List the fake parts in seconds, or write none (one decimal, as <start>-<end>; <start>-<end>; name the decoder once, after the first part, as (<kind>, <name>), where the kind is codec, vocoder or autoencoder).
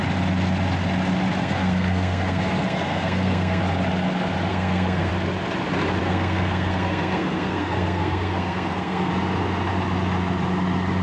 1.4-3.6 (codec, SNAC); 4.5-5.1; 6.0-9.1